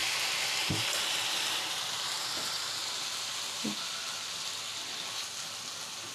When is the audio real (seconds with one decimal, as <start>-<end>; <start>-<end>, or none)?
3.7-6.1